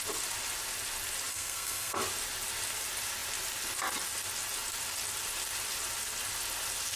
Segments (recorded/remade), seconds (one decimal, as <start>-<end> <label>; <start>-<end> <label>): 0.0-1.3 recorded; 1.3-2.0 remade; 2.0-7.0 recorded